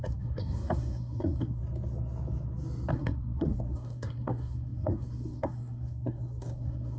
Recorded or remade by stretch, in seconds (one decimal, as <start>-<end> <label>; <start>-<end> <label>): 0.0-1.6 remade; 1.6-2.9 recorded; 2.9-7.0 remade